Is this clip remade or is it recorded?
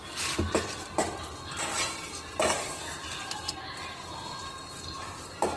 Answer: recorded